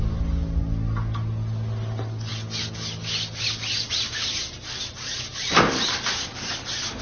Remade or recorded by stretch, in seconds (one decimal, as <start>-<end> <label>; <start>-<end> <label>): 0.0-7.0 recorded

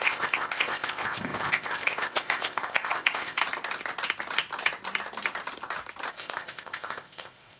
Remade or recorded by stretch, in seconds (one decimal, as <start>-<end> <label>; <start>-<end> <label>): 0.0-3.4 remade; 3.4-6.1 recorded; 6.1-7.6 remade

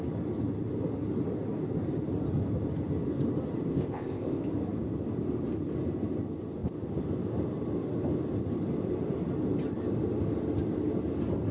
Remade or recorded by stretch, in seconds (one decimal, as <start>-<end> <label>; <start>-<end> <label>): 0.0-3.7 recorded; 3.7-4.4 remade; 4.4-11.5 recorded

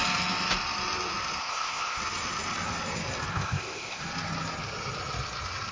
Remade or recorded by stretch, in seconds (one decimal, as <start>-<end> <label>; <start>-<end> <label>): 0.0-1.4 recorded; 1.4-2.0 remade; 2.0-3.3 recorded; 3.3-4.0 remade; 4.0-5.7 recorded

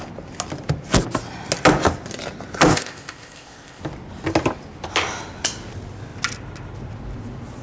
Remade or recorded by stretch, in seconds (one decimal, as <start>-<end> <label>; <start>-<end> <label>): 0.0-2.7 recorded; 2.7-3.8 remade; 3.8-7.6 recorded